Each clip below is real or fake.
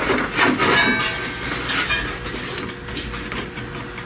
real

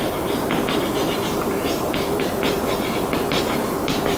fake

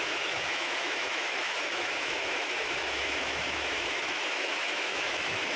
fake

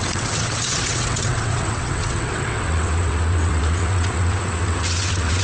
fake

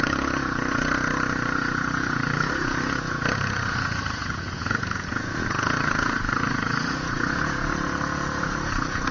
fake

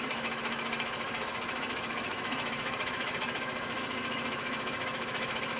fake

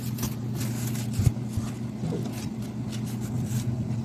real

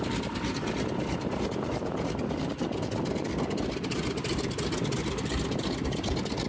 real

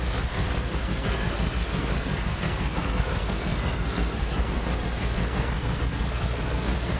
fake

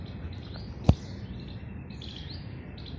real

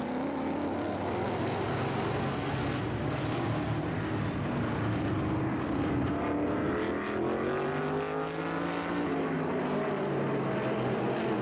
real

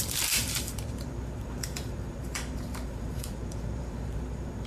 fake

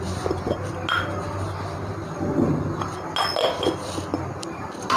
real